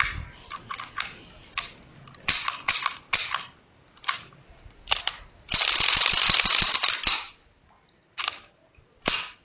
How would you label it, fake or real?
real